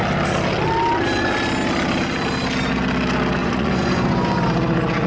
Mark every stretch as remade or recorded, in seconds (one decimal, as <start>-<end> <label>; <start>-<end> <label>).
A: 0.0-3.4 recorded; 3.4-4.4 remade; 4.4-5.1 recorded